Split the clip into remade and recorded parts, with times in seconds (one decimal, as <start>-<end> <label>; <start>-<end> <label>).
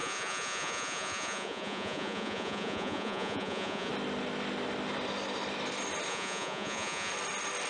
0.0-3.9 remade; 3.9-6.1 recorded; 6.1-7.1 remade; 7.1-7.7 recorded